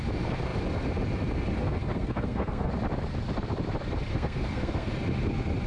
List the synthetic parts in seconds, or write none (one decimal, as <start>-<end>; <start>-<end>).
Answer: 1.6-2.7; 4.1-4.9